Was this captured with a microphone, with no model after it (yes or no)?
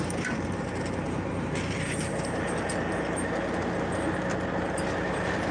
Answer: yes